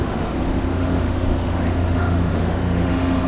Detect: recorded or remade remade